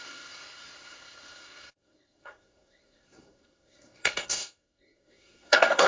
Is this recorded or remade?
remade